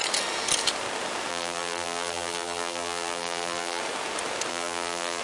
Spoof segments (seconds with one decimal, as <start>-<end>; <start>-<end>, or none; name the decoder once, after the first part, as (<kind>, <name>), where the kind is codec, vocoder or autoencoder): 1.3-3.8 (vocoder, BigVGAN v2); 4.5-5.2